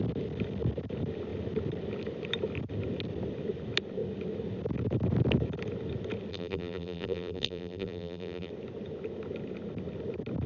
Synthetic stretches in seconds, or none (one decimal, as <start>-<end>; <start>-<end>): 6.3-8.5